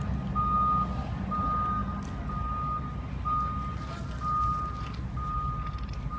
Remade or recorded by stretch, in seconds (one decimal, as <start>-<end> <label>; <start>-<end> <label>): 0.0-6.2 recorded